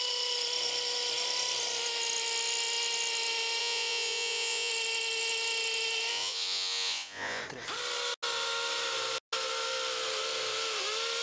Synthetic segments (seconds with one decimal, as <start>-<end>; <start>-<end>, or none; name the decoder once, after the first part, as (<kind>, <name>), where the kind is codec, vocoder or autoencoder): 3.6-4.7 (vocoder, Vocos); 6.1-7.4